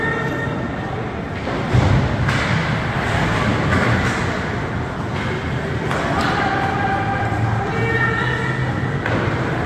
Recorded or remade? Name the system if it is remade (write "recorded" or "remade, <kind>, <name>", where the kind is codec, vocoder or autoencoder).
recorded